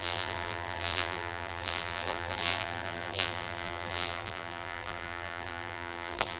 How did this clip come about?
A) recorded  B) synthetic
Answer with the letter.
B